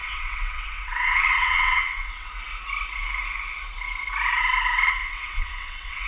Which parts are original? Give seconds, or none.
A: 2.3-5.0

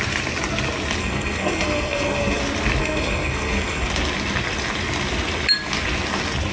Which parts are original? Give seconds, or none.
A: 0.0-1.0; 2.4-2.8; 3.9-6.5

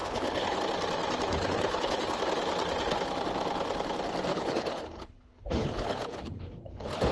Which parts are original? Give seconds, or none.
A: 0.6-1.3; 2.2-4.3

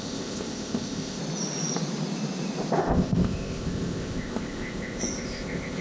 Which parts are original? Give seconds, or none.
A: 1.2-2.8

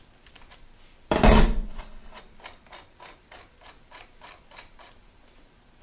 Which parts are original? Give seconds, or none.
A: 0.0-1.7; 2.2-5.8

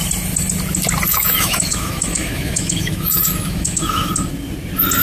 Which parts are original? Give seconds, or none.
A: 0.0-1.1; 4.1-5.0

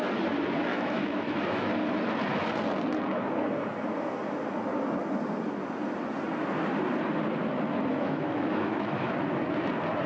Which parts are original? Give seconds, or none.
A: 0.0-0.7; 1.7-7.9; 9.1-10.1

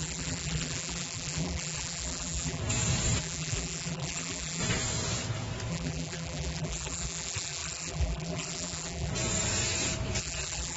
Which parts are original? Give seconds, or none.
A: 2.6-3.2; 4.6-5.7; 9.1-10.2